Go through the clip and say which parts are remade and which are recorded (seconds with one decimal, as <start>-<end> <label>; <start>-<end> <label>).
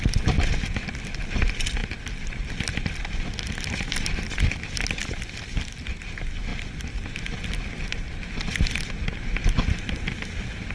0.0-10.7 recorded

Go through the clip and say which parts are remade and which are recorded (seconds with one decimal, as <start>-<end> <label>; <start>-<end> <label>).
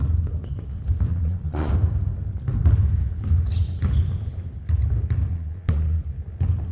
0.0-1.1 recorded; 1.1-1.7 remade; 1.7-5.3 recorded; 5.3-6.0 remade; 6.0-6.7 recorded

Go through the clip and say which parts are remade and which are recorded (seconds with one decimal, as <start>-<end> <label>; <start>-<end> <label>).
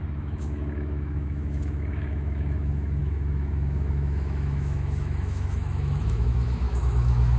0.0-7.4 remade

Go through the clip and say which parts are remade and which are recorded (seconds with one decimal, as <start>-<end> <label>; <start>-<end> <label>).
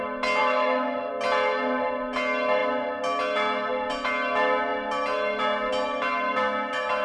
0.0-0.4 recorded; 0.4-1.1 remade; 1.1-7.0 recorded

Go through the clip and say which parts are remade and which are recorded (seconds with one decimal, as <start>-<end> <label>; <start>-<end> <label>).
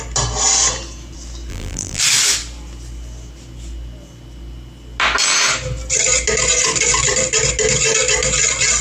0.0-1.5 recorded; 1.5-2.0 remade; 2.0-8.8 recorded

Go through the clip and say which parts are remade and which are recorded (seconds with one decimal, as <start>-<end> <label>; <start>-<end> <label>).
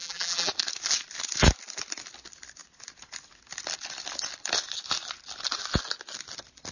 0.0-0.5 remade; 0.5-6.7 recorded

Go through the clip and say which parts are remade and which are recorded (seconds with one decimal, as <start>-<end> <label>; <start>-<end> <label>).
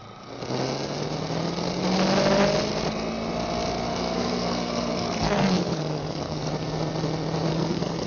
0.0-3.9 recorded; 3.9-6.5 remade; 6.5-7.5 recorded; 7.5-8.1 remade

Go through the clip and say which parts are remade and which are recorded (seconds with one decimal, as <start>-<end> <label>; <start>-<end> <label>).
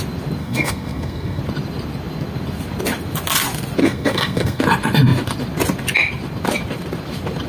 0.0-0.4 recorded; 0.4-1.4 remade; 1.4-3.8 recorded; 3.8-4.6 remade; 4.6-7.5 recorded